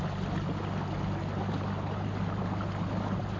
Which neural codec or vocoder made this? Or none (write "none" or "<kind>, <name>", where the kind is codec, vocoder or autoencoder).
none